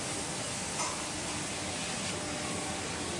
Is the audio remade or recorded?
recorded